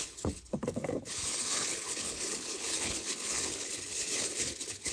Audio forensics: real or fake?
fake